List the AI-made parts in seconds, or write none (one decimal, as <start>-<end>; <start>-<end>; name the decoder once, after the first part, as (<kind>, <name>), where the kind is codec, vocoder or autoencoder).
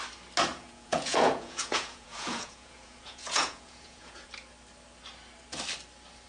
0.5-4.3 (vocoder, Vocos)